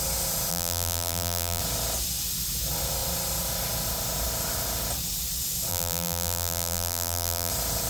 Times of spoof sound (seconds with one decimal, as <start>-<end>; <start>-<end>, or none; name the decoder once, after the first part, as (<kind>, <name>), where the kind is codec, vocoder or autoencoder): 0.5-1.6 (vocoder, BigVGAN v2); 5.7-7.5